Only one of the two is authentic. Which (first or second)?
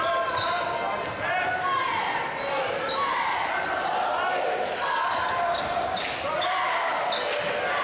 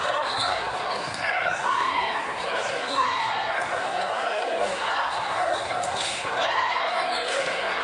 first